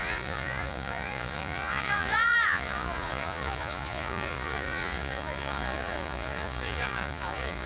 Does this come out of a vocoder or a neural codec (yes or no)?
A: yes